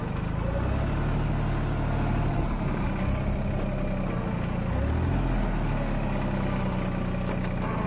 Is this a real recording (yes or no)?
yes